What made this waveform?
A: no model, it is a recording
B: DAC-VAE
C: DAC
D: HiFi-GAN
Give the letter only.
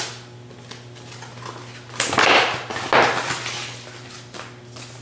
A